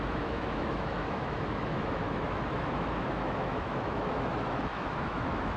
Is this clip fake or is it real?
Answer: fake